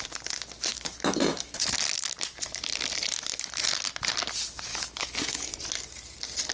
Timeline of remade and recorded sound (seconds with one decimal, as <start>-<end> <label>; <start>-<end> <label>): 0.0-0.7 recorded; 0.7-1.7 remade; 1.7-4.7 recorded; 4.7-5.5 remade; 5.5-6.5 recorded